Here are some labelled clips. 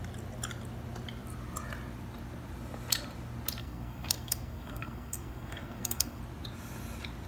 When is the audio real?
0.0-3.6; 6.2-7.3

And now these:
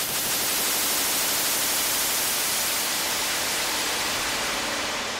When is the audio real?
0.0-5.2

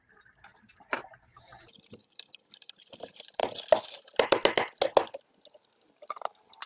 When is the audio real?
3.4-4.0; 4.4-5.5

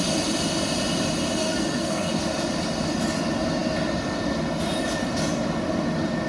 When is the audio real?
0.0-1.4; 2.2-6.3

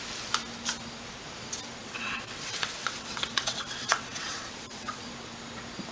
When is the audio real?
0.0-1.8; 5.1-5.9

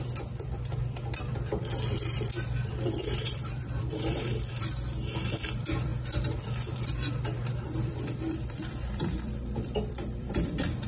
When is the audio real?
none

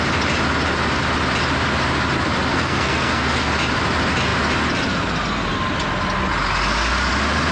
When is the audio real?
0.0-2.5; 3.5-7.5